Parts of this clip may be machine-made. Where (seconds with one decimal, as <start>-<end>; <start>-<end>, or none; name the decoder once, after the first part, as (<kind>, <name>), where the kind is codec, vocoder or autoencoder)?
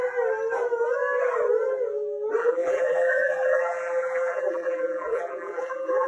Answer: 2.4-6.1 (vocoder, BigVGAN v2)